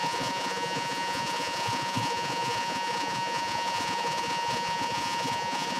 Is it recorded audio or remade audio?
remade